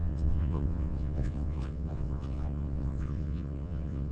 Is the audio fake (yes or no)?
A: yes